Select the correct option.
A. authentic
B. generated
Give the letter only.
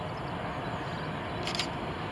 A